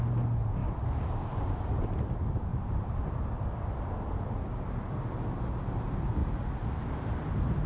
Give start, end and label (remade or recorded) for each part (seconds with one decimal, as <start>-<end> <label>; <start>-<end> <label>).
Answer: 0.0-0.6 recorded; 0.6-1.5 remade; 1.5-2.5 recorded; 2.5-3.3 remade; 3.3-6.2 recorded; 6.2-7.7 remade